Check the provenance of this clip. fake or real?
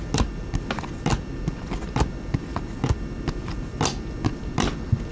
real